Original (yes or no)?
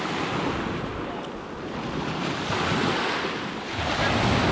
yes